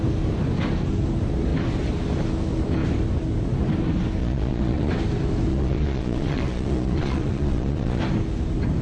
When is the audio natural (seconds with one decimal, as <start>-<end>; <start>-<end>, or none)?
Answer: 0.0-4.2; 4.9-5.5; 8.0-8.8